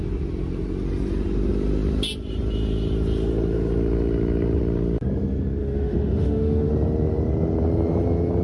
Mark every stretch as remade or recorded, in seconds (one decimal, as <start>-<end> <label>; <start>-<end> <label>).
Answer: 0.0-5.6 recorded; 5.6-6.7 remade; 6.7-8.4 recorded